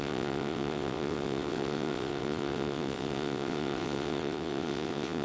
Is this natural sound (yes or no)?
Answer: no